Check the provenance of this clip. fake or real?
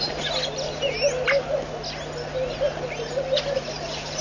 real